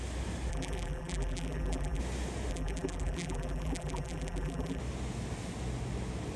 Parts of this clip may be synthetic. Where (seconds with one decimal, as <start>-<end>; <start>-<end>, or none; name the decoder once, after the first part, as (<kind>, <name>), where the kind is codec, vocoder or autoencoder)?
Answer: 0.5-2.0 (vocoder, BigVGAN v2); 2.5-4.8